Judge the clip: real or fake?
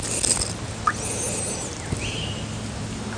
real